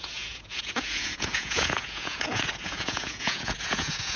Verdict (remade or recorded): remade